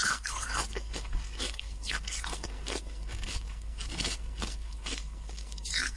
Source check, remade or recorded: remade